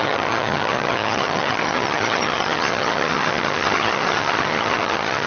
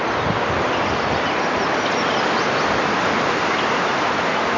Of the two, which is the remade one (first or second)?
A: first